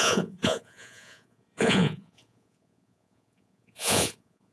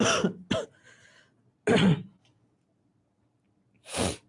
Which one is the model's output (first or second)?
first